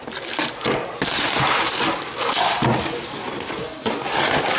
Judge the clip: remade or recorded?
recorded